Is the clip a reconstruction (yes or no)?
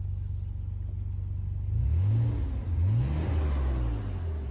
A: no